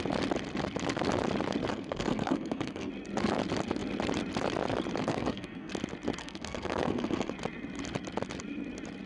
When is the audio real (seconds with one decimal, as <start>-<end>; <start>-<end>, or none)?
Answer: 0.0-1.7; 2.9-5.1; 5.7-6.2; 7.3-9.1